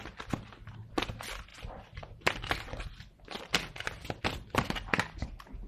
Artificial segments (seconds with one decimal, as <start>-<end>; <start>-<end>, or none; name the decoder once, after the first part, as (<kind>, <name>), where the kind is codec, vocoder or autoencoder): none